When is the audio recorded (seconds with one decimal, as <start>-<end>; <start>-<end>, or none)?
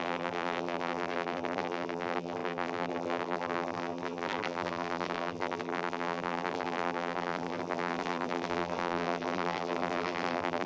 none